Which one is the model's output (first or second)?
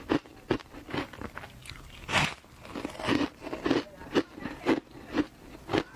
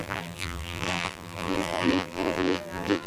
second